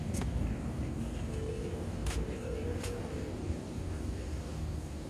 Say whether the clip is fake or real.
fake